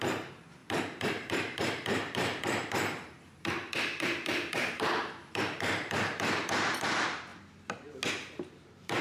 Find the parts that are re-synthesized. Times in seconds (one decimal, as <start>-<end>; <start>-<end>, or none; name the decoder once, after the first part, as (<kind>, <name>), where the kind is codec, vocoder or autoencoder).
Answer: 0.0-7.3 (vocoder, BigVGAN v2); 8.1-9.0